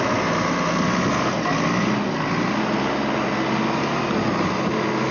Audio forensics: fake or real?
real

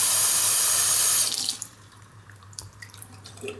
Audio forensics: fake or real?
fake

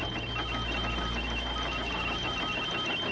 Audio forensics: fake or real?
real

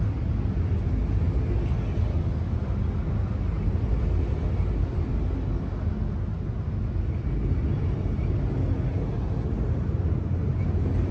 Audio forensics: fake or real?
real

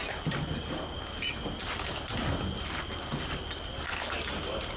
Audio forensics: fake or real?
real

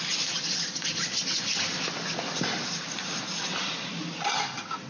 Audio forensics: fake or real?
real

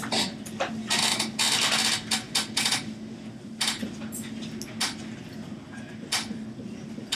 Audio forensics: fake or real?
real